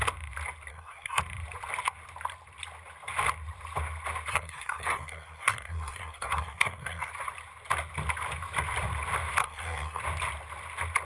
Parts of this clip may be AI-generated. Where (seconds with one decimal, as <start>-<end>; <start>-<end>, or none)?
0.7-1.2; 4.3-7.1; 9.4-10.0